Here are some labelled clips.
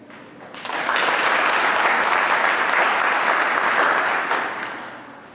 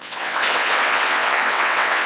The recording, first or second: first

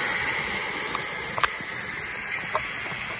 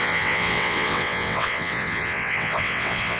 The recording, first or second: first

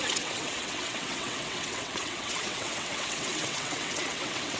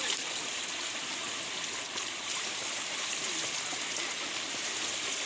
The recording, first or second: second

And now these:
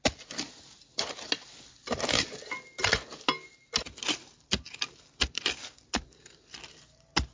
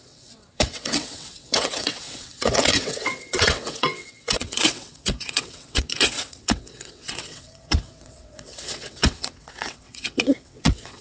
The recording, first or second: first